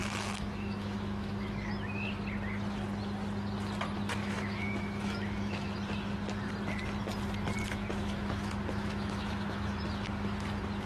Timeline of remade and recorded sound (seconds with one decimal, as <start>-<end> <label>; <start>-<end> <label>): 0.0-1.7 remade; 1.7-4.2 recorded; 4.2-5.7 remade; 5.7-7.6 recorded; 7.6-9.8 remade; 9.8-10.9 recorded